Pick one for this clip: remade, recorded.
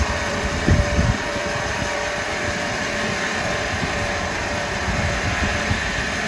remade